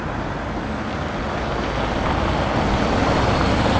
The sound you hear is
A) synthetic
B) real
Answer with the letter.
B